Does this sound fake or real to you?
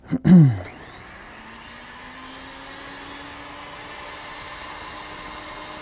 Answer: real